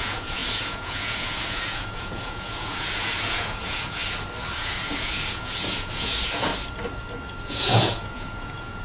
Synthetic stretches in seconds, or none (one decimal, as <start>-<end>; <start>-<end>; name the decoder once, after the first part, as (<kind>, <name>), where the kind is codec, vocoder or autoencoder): 0.0-4.0 (vocoder, Vocos); 4.6-6.5; 7.5-8.8